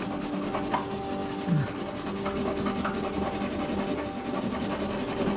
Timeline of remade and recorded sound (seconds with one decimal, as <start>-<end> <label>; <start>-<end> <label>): 0.0-5.4 recorded